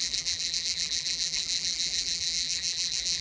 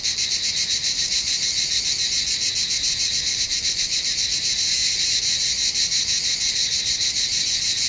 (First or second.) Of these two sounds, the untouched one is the second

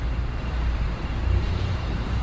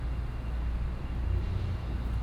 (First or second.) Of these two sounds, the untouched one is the second